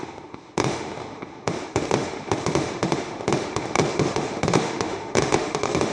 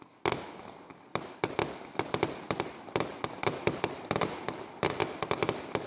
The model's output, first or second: first